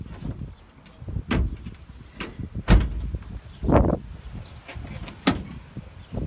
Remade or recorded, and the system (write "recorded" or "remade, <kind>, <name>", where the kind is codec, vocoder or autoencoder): recorded